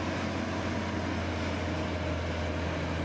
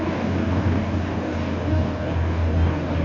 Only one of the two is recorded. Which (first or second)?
first